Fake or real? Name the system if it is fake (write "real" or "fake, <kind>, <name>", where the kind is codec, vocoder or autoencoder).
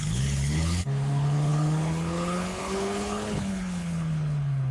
fake, codec, HILCodec